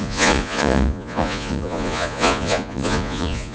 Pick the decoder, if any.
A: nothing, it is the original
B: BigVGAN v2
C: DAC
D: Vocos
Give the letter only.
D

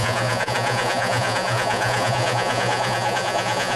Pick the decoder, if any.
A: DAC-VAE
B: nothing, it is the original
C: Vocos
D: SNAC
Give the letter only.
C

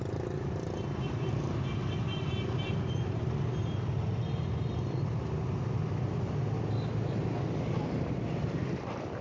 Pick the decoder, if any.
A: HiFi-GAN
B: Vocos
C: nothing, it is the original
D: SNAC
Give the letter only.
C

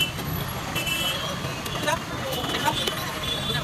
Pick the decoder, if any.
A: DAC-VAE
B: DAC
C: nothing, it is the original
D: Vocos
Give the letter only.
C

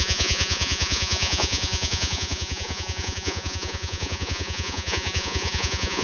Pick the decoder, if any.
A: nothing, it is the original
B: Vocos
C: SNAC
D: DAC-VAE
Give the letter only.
B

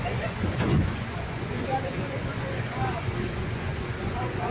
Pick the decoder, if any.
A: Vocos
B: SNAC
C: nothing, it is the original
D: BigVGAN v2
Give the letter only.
A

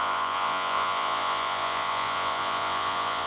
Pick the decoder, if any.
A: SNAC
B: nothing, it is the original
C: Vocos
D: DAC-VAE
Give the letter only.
C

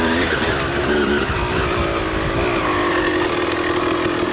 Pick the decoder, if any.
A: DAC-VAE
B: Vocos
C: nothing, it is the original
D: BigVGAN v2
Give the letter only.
C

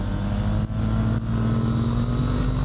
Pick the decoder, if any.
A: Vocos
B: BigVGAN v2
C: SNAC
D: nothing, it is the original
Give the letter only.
D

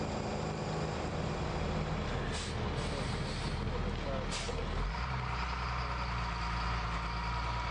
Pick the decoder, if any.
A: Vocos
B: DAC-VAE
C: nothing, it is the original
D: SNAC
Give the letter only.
C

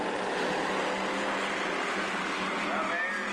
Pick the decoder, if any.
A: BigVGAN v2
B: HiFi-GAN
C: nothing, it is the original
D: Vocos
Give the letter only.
C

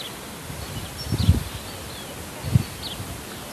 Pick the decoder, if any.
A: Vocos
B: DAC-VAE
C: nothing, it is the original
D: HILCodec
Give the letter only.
C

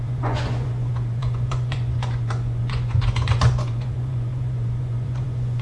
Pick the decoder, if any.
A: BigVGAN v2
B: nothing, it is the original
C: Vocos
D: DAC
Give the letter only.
C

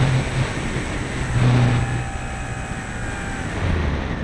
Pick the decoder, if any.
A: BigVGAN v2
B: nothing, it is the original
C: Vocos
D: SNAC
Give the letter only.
B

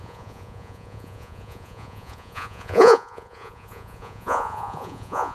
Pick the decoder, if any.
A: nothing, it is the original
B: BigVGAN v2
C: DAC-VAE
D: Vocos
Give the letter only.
D